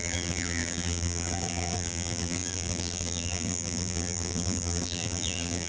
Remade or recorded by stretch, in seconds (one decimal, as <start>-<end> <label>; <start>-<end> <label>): 0.0-5.7 remade